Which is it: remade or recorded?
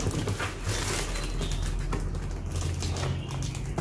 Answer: recorded